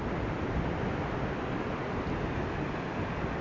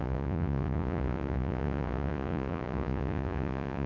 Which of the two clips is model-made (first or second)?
second